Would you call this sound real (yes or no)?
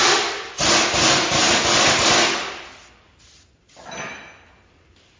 yes